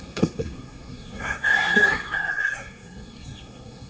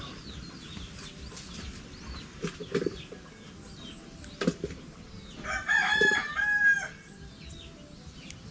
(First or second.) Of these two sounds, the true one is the second